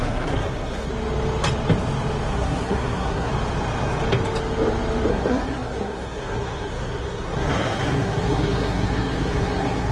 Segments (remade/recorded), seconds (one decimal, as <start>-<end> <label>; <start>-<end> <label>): 0.0-0.9 remade; 0.9-2.3 recorded; 2.3-3.3 remade; 3.3-5.1 recorded; 5.1-9.9 remade